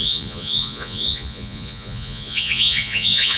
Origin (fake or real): fake